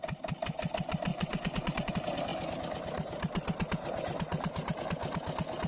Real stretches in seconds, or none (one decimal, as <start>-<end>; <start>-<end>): 0.0-1.1; 1.9-5.7